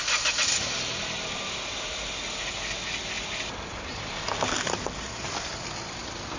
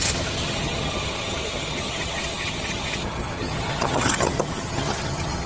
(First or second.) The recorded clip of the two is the first